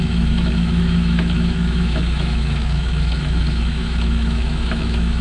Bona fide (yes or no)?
no